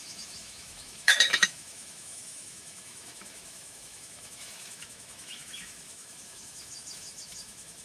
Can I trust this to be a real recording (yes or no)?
no